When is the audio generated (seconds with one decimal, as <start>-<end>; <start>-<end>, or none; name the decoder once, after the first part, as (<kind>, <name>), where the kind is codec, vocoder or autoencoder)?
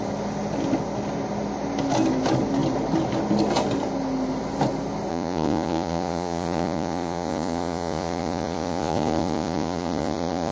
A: 5.1-10.5 (vocoder, Vocos)